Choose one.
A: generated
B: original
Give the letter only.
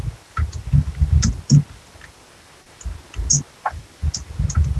B